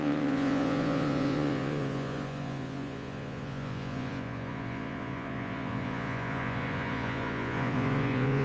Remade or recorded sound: remade